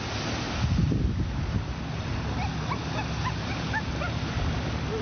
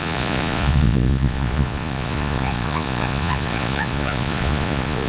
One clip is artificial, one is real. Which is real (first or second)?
first